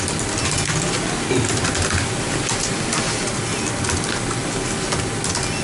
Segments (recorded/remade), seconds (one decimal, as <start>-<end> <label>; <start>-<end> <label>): 0.0-5.6 recorded